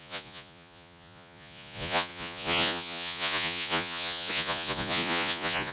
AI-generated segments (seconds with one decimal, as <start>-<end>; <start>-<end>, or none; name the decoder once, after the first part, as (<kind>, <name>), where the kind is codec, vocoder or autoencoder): 0.0-5.7 (vocoder, Vocos)